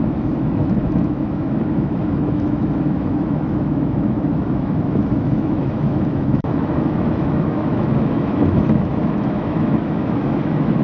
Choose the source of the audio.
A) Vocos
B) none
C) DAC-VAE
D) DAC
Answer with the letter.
C